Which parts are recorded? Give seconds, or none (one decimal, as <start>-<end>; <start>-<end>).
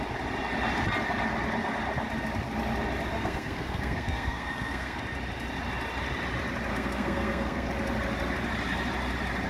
0.0-3.1; 5.0-6.7; 7.7-9.5